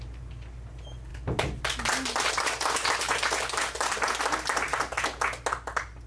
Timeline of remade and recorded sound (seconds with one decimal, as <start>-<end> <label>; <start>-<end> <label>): 0.0-6.1 recorded